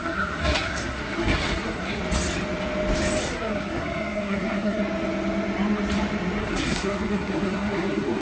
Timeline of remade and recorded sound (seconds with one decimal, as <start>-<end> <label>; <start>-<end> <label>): 0.0-2.0 remade; 2.0-3.2 recorded; 3.2-4.8 remade; 4.8-6.4 recorded; 6.4-8.2 remade